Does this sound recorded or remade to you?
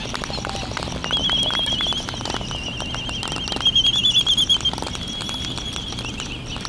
recorded